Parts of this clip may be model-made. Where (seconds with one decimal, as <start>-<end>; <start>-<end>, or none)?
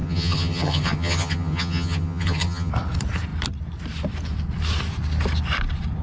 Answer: 0.0-2.7